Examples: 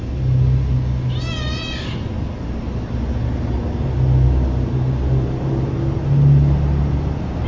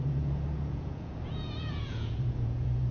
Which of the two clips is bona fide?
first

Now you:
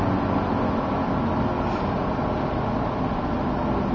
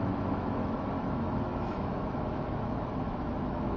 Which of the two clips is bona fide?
first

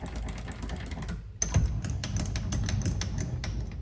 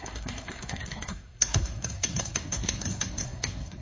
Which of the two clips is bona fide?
first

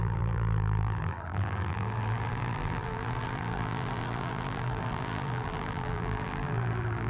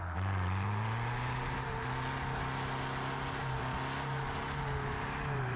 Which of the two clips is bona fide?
second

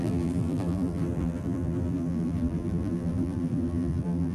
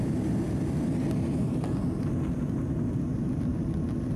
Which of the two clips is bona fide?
second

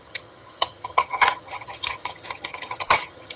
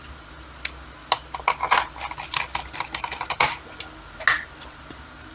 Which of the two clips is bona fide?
second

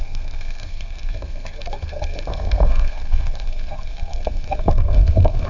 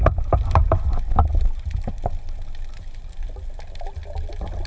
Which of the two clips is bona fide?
second